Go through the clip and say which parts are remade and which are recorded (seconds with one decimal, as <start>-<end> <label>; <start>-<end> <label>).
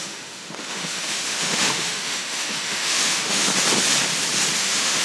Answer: 0.0-3.5 remade; 3.5-4.6 recorded; 4.6-5.0 remade